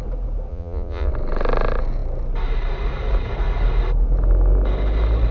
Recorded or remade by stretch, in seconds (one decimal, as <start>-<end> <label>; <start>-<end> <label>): 0.0-0.5 recorded; 0.5-1.1 remade; 1.1-5.3 recorded

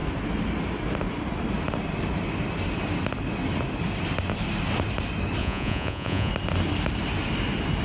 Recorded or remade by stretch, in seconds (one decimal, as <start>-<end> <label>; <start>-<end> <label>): 0.0-5.4 recorded; 5.4-6.3 remade; 6.3-7.8 recorded

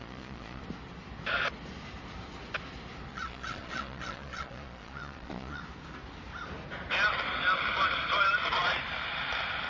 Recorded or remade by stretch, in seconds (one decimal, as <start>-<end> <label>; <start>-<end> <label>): 0.0-0.6 remade; 0.6-3.1 recorded; 3.1-5.6 remade; 5.6-9.7 recorded

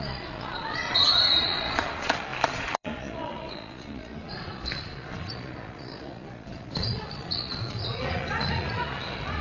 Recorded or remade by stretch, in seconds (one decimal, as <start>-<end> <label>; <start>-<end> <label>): 0.0-9.4 remade